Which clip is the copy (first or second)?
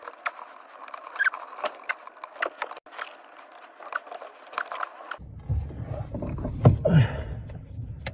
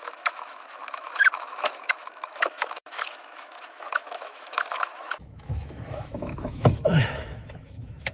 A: second